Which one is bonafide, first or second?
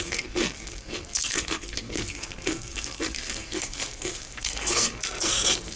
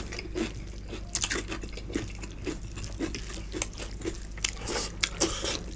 second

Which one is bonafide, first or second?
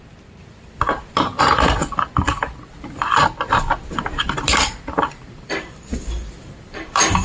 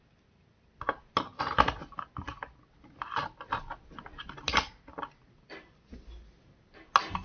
second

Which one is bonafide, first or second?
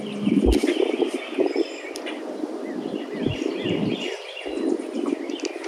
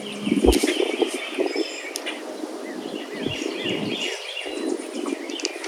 second